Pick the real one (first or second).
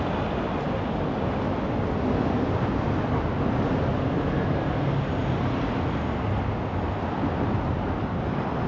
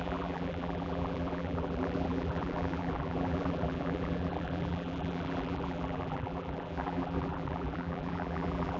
first